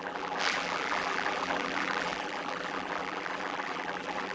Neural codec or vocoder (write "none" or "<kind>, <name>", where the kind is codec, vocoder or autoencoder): vocoder, BigVGAN v2